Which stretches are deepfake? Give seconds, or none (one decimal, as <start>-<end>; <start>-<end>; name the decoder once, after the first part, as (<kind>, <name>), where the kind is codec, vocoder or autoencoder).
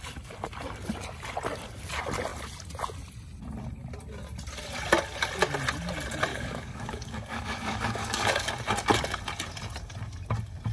6.3-8.5 (codec, DAC)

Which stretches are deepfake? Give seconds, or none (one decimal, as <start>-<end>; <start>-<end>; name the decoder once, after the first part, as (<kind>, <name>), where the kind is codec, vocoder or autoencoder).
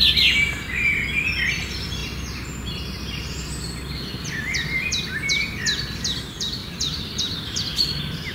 6.6-7.6 (vocoder, BigVGAN v2)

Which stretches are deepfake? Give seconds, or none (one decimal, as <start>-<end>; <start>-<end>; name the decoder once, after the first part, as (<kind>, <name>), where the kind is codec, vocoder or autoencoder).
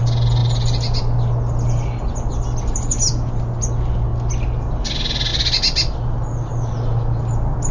none